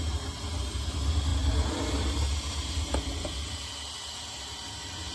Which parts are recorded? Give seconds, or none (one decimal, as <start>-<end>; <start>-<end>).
0.0-5.1